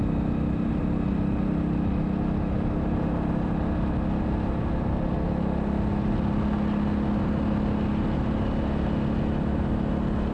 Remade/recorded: recorded